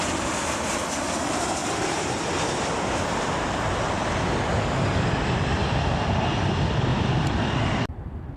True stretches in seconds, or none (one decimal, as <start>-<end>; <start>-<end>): 1.6-5.0